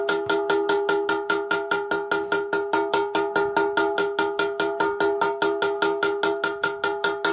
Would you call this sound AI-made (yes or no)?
no